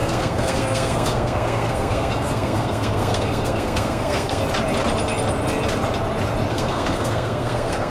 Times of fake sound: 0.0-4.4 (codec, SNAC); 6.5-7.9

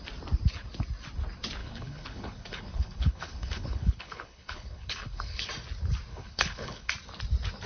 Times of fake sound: 1.6-5.5 (codec, HILCodec); 6.1-6.9

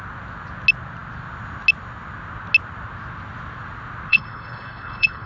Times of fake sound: 4.1-5.3 (codec, HILCodec)

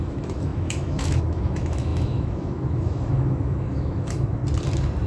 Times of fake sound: 0.0-4.4 (autoencoder, DAC-VAE)

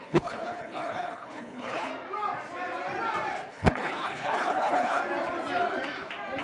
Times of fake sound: 0.0-1.9 (codec, HILCodec); 3.5-5.0

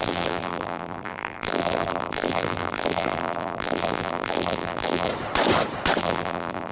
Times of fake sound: 0.0-5.1 (vocoder, BigVGAN v2); 6.0-6.7